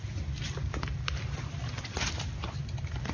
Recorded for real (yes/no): yes